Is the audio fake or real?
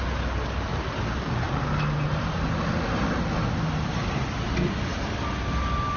real